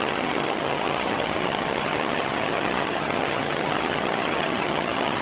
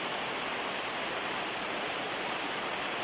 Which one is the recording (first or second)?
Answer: second